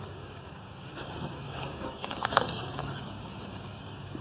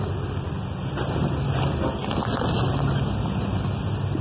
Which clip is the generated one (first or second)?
first